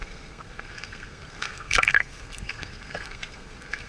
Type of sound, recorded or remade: remade